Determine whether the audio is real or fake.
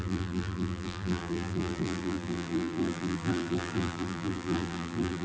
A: fake